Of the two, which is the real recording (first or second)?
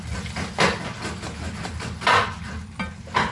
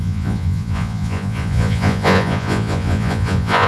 first